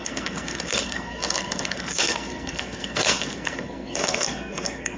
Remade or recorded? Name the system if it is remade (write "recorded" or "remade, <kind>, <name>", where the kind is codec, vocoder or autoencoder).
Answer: remade, codec, SNAC